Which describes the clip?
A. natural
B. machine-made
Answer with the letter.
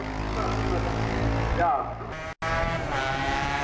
A